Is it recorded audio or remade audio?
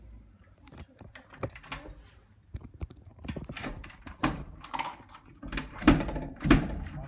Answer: remade